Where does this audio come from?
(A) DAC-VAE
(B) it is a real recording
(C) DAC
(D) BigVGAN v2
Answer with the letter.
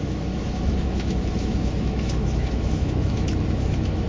A